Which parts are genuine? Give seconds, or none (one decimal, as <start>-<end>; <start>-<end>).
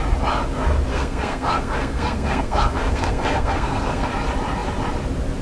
0.0-0.9; 4.1-5.4